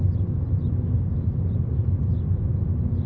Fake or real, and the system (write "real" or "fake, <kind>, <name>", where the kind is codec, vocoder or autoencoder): real